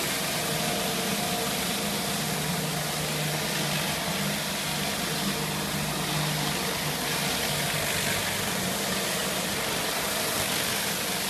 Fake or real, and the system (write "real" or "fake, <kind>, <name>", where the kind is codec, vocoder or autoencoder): real